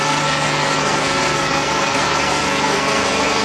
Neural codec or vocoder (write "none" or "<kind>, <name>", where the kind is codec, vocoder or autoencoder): codec, SNAC